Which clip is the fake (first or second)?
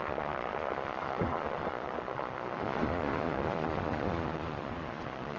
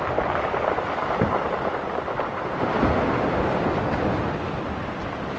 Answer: first